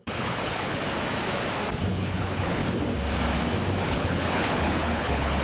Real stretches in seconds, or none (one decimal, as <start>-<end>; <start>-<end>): 0.8-1.9; 2.6-3.8